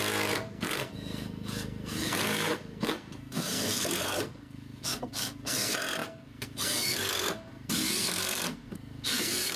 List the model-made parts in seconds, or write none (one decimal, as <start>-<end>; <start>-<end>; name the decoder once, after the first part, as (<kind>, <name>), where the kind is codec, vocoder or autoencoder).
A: 0.0-9.6 (codec, SNAC)

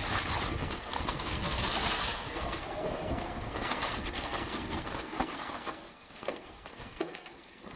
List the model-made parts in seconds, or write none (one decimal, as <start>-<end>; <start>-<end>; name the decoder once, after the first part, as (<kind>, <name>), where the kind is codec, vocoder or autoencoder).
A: 0.5-7.8 (codec, SNAC)

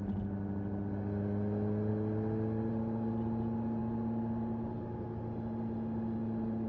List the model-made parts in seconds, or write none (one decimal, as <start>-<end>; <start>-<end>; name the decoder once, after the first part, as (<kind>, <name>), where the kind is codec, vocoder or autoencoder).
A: none

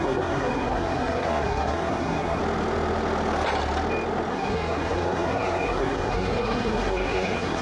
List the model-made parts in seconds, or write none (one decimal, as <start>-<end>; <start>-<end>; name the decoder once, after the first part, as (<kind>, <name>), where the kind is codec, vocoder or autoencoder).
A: 0.0-2.4 (codec, SNAC); 4.3-7.6

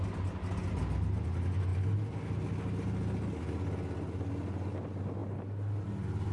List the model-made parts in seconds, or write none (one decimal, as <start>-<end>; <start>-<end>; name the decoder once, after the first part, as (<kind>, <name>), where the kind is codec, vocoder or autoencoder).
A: none

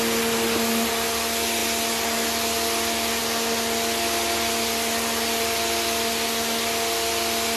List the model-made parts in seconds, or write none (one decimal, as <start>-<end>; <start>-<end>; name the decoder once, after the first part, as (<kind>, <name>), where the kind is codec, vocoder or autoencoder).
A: none